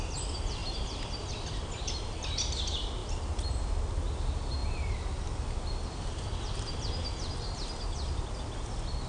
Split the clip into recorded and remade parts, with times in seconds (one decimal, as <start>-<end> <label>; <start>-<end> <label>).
0.0-9.1 recorded